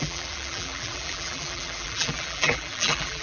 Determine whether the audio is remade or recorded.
remade